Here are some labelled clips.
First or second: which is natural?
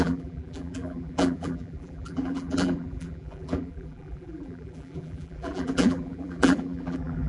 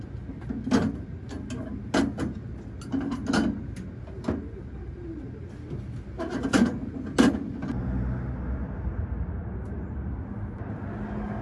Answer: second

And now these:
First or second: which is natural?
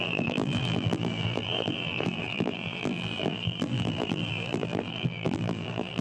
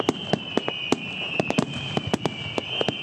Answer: second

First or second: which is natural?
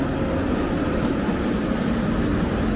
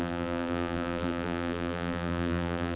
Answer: first